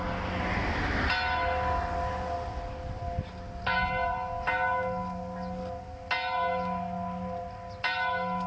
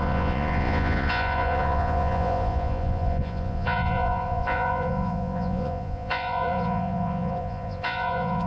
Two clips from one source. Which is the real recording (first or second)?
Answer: first